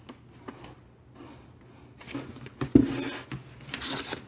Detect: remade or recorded recorded